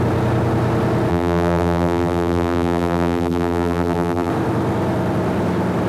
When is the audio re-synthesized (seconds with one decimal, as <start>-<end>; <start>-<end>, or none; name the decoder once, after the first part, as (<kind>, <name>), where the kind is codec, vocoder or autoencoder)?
1.1-4.3 (vocoder, BigVGAN v2)